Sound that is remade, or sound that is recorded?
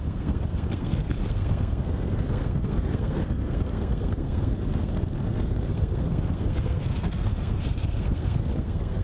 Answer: remade